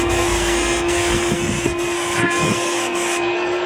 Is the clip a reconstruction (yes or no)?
yes